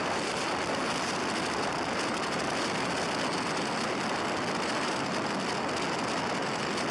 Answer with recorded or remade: recorded